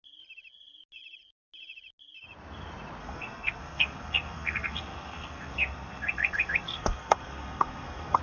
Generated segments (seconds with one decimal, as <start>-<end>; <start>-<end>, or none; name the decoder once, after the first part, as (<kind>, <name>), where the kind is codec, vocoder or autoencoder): 3.0-8.2 (codec, SNAC)